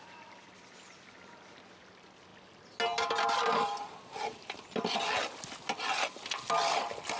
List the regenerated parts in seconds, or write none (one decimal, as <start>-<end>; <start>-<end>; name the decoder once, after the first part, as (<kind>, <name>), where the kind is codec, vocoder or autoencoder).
none